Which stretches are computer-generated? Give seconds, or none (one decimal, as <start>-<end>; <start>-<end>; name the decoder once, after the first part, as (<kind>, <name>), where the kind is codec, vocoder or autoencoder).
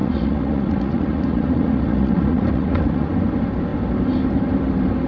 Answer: 0.0-3.1 (vocoder, Vocos)